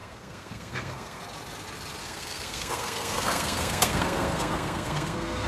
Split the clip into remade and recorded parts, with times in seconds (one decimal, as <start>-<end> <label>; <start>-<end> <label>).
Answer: 0.0-1.2 remade; 1.2-2.0 recorded; 2.0-5.5 remade